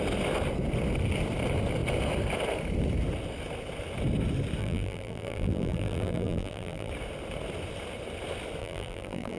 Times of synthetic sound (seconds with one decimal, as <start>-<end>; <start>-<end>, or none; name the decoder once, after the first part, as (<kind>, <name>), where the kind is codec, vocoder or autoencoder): 4.6-6.9 (vocoder, BigVGAN v2); 8.6-9.4